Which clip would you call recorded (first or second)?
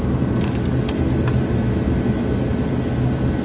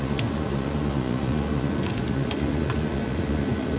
first